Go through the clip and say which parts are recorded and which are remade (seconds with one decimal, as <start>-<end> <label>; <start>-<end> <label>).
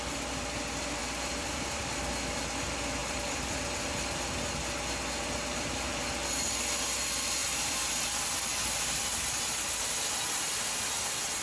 0.0-1.0 recorded; 1.0-1.8 remade; 1.8-3.0 recorded; 3.0-4.5 remade; 4.5-7.4 recorded; 7.4-9.3 remade; 9.3-11.4 recorded